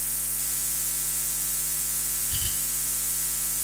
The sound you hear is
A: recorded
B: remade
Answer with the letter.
A